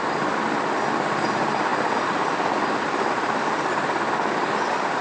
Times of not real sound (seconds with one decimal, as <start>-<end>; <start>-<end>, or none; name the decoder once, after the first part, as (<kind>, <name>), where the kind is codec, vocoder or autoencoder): none